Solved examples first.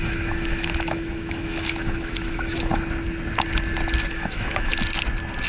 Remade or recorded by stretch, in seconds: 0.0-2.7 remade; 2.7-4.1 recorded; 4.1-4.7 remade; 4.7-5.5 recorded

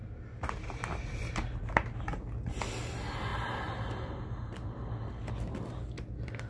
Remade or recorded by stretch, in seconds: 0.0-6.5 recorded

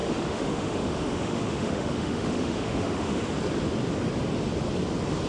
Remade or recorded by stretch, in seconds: 0.0-3.2 remade; 3.2-5.3 recorded